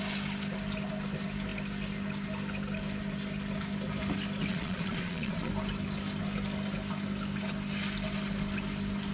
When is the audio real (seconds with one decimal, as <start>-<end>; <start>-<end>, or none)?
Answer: 0.0-4.5; 5.5-9.1